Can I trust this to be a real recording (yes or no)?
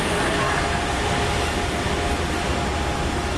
yes